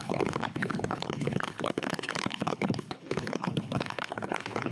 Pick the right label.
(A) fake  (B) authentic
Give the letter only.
A